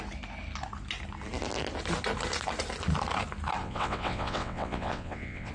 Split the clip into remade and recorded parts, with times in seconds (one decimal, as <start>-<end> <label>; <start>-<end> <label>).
0.0-3.6 recorded; 3.6-5.5 remade